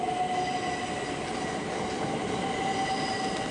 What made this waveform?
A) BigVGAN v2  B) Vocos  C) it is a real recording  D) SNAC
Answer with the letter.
C